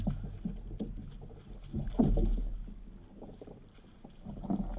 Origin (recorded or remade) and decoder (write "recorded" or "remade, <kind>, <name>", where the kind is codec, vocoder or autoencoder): recorded